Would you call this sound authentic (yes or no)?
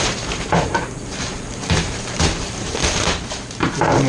no